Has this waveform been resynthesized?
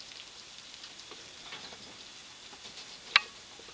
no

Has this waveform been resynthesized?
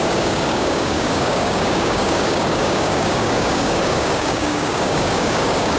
yes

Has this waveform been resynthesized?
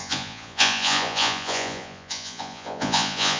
yes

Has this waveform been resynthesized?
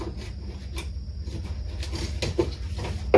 no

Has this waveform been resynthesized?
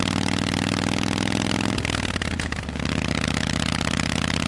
no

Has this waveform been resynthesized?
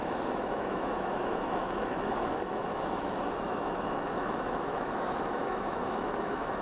yes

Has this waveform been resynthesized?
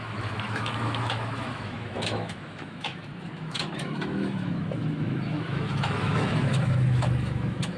yes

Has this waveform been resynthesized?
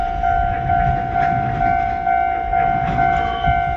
no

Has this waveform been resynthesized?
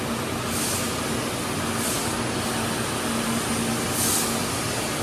no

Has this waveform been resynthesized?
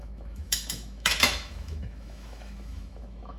yes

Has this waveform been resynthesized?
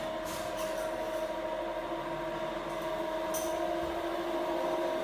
no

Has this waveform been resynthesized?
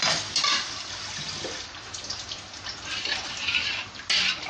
no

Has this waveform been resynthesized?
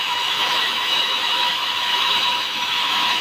yes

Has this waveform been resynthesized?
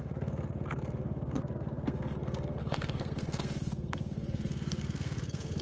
yes